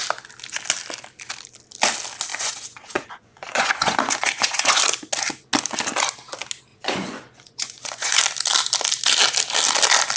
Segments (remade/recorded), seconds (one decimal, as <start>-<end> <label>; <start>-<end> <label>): 0.0-2.3 recorded; 2.3-4.8 remade; 4.8-6.7 recorded; 6.7-8.2 remade; 8.2-10.2 recorded